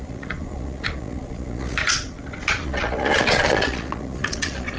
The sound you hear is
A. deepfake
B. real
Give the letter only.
A